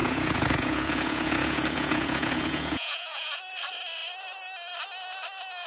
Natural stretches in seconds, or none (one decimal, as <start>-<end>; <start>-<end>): 3.4-5.7